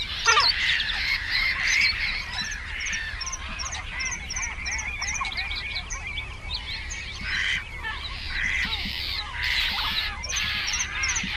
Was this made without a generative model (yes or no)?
no